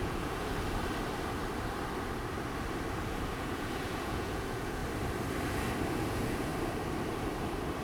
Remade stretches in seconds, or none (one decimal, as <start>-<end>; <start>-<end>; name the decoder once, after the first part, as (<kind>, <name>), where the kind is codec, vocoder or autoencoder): 0.0-0.5 (vocoder, Vocos); 3.3-4.8; 5.9-6.5